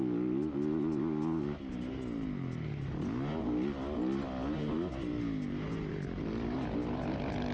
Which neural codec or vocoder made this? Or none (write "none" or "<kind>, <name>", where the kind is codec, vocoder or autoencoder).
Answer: none